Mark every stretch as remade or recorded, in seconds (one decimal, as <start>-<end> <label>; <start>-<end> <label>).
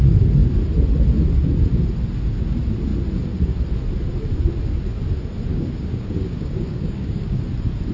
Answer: 0.0-5.5 recorded; 5.5-7.4 remade; 7.4-7.9 recorded